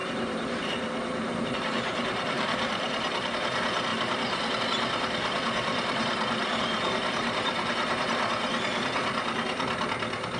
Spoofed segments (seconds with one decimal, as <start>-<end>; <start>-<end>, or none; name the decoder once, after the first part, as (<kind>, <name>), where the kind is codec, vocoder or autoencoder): 0.0-3.3 (vocoder, BigVGAN v2); 3.9-4.6; 5.7-8.5